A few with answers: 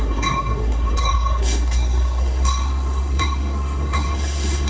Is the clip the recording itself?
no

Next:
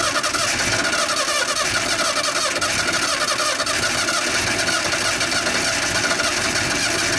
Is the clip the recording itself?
yes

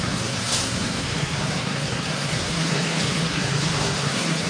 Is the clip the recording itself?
no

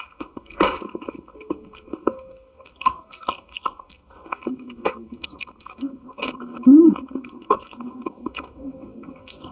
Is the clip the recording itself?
no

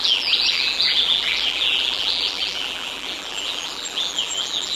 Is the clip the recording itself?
no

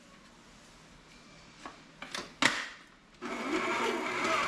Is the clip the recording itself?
yes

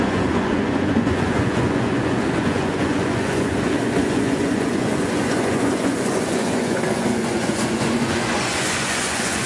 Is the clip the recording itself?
no